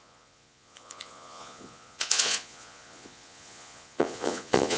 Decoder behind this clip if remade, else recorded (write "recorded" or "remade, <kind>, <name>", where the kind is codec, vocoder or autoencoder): remade, vocoder, Vocos